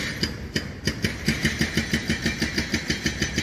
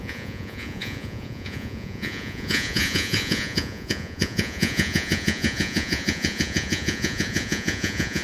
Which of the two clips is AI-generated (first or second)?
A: second